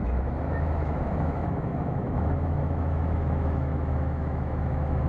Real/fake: fake